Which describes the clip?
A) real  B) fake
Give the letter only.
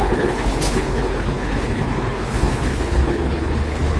B